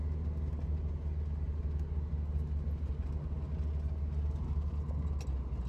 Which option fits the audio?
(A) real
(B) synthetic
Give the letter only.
A